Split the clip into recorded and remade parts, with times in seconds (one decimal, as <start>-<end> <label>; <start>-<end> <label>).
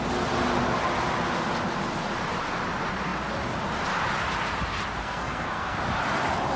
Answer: 0.0-5.0 recorded; 5.0-5.8 remade; 5.8-6.6 recorded